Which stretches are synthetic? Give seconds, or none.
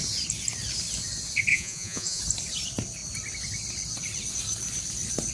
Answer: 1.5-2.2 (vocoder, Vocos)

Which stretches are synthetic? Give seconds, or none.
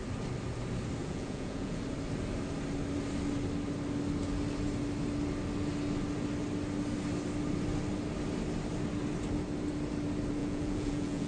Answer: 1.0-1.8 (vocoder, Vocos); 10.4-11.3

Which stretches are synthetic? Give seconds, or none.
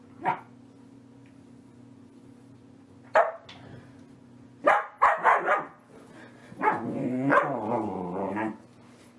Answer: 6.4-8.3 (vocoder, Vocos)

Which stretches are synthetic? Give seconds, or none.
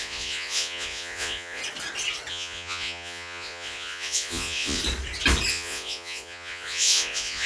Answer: 0.0-1.6 (vocoder, Vocos); 2.3-4.8; 5.5-7.5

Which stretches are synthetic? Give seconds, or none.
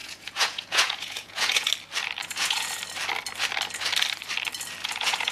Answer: 0.0-1.7 (vocoder, Vocos); 2.2-2.8; 4.8-5.3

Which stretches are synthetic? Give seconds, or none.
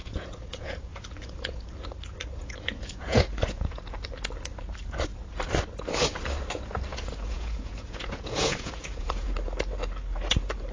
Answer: 0.0-1.6 (vocoder, Vocos); 2.4-3.8; 6.9-9.3